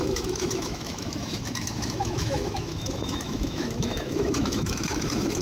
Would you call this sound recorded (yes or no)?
no